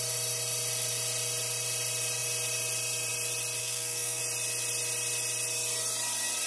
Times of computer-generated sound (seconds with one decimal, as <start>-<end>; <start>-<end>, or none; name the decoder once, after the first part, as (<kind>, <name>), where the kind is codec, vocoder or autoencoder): 3.6-4.2 (codec, SNAC)